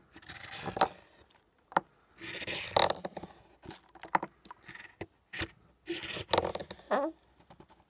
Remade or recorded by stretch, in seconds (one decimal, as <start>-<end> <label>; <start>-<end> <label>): 0.0-7.9 recorded